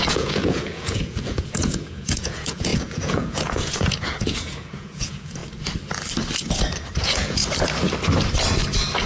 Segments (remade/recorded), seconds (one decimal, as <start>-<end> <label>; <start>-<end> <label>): 0.0-5.4 remade; 5.4-7.0 recorded; 7.0-7.4 remade; 7.4-9.1 recorded